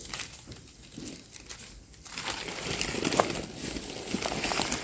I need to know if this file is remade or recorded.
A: recorded